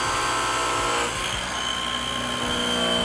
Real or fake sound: real